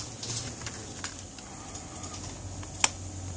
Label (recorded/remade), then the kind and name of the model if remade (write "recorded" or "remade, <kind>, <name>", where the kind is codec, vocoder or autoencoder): recorded